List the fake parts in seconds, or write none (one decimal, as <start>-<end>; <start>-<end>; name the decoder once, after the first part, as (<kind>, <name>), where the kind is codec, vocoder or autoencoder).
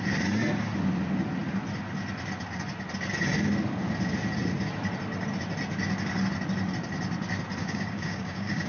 7.6-8.7 (codec, DAC)